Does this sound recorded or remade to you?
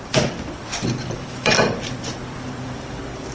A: remade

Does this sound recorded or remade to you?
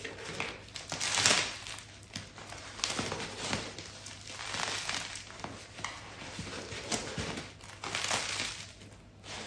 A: recorded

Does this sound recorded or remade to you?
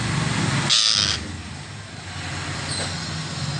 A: recorded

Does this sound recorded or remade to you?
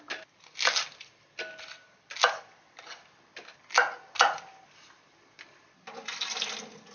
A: recorded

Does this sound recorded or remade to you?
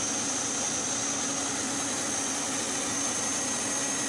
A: recorded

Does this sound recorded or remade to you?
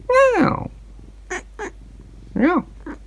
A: recorded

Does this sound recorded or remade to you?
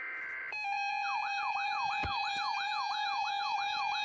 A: recorded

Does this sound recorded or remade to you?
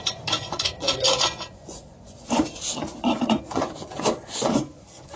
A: remade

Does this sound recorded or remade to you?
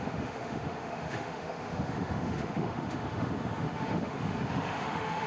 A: remade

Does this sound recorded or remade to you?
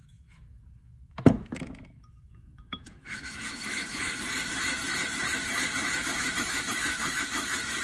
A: remade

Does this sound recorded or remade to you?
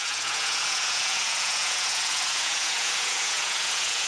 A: remade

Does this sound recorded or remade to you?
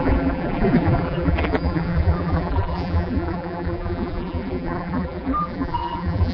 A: remade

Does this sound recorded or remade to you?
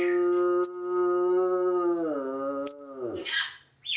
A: recorded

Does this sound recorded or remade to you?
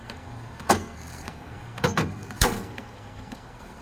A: remade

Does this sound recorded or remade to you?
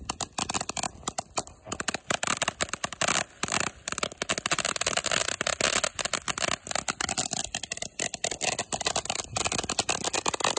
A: recorded